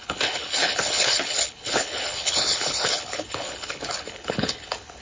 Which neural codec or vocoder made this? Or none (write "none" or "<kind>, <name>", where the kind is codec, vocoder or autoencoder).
codec, HILCodec